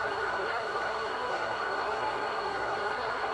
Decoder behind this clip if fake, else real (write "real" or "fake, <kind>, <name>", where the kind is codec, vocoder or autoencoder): fake, codec, SNAC